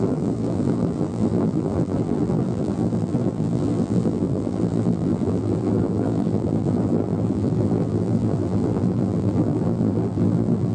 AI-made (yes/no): yes